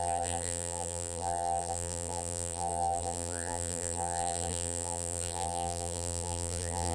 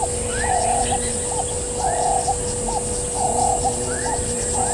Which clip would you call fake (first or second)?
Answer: first